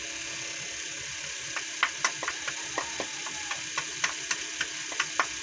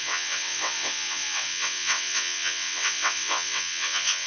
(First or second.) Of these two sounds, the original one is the first